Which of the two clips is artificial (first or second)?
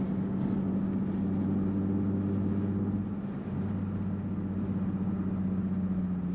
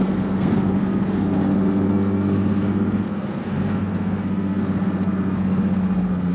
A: second